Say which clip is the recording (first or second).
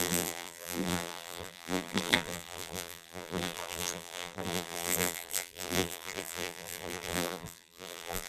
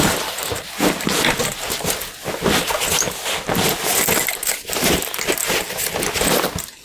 second